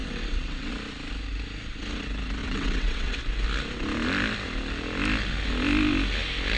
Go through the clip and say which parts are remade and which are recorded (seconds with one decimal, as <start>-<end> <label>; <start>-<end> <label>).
0.0-0.7 remade; 0.7-2.4 recorded; 2.4-3.2 remade; 3.2-6.6 recorded